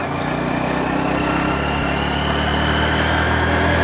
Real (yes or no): yes